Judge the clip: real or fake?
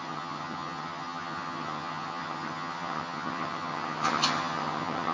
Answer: fake